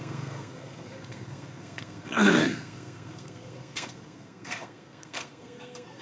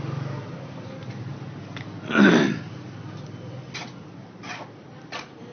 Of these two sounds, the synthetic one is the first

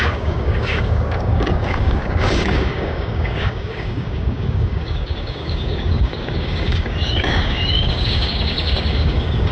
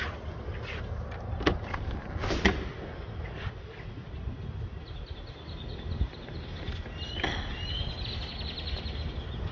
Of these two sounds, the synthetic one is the first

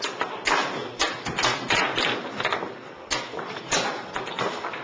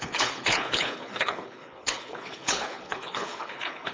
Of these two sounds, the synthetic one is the second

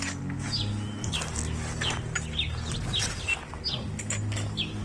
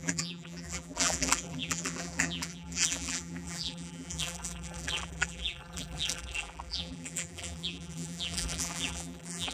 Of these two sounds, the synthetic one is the second